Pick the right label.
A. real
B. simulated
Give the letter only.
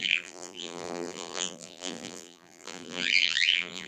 B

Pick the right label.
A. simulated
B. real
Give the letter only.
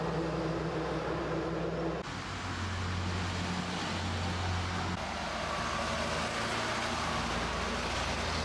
B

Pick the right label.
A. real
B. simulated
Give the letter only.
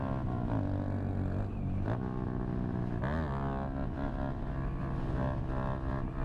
A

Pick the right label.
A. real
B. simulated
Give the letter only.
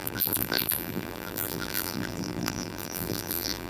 B